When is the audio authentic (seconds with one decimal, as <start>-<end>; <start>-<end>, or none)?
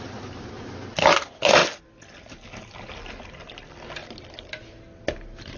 0.0-5.6